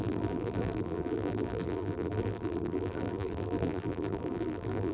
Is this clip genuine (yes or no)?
no